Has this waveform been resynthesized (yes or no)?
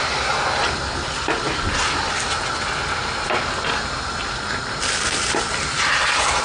no